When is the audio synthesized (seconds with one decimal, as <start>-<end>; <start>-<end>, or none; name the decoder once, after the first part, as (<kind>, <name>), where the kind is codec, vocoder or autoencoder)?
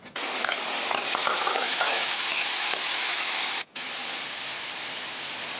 1.2-3.4 (autoencoder, DAC-VAE)